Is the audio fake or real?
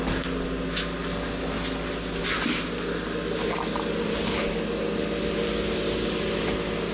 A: real